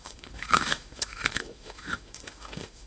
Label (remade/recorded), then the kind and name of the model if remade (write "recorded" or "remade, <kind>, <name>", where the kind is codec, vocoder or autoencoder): remade, autoencoder, DAC-VAE